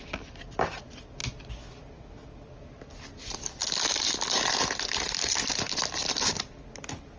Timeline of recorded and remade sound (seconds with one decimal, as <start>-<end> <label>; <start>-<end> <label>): 0.0-7.2 recorded